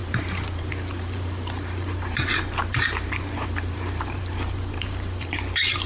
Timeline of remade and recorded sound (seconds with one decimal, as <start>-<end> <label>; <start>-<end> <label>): 0.0-5.9 remade